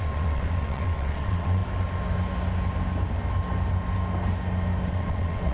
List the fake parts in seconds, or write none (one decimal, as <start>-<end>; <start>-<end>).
0.0-1.6; 4.9-5.5

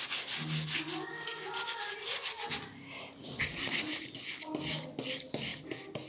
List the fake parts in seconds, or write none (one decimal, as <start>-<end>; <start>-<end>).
none